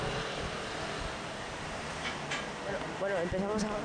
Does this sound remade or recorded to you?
recorded